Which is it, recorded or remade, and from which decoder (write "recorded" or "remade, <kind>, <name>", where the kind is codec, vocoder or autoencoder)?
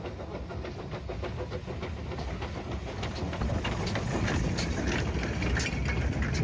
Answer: recorded